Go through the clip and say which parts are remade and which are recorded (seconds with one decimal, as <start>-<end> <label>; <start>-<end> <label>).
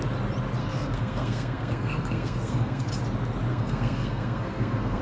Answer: 0.0-0.6 recorded; 0.6-2.9 remade; 2.9-3.5 recorded; 3.5-5.0 remade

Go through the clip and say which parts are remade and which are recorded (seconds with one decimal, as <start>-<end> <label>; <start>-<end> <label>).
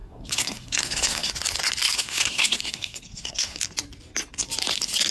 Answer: 0.0-1.3 remade; 1.3-1.8 recorded; 1.8-3.6 remade; 3.6-5.1 recorded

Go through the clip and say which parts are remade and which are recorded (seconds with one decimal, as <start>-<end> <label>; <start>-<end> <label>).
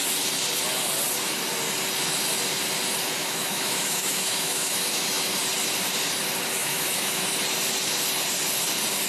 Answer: 0.0-3.2 recorded; 3.2-5.3 remade; 5.3-6.6 recorded; 6.6-7.2 remade; 7.2-9.1 recorded